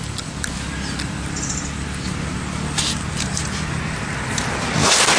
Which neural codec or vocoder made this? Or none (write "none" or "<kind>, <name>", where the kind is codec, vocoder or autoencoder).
none